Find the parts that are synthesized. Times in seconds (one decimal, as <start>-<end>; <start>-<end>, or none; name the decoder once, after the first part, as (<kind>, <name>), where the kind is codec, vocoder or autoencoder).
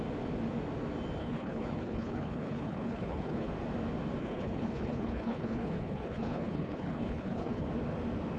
1.2-3.5 (codec, HILCodec); 4.2-7.7